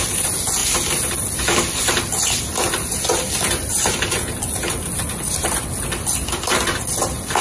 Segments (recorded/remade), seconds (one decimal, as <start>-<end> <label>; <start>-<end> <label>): 0.0-7.4 recorded